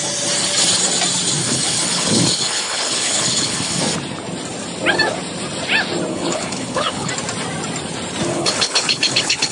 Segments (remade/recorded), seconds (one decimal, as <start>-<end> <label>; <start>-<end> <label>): 0.0-1.4 recorded; 1.4-3.8 remade; 3.8-6.1 recorded; 6.1-7.1 remade; 7.1-8.3 recorded; 8.3-9.5 remade